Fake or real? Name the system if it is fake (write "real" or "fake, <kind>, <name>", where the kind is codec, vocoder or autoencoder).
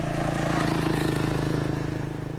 real